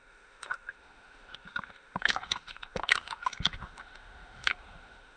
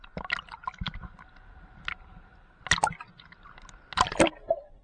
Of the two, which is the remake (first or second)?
first